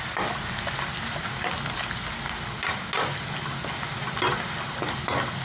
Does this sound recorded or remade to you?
recorded